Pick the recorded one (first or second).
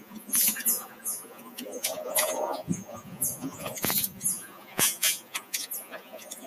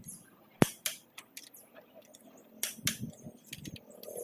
second